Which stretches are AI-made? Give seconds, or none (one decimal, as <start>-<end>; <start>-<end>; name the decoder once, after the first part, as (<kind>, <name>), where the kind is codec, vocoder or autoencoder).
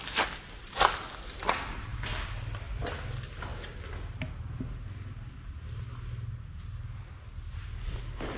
none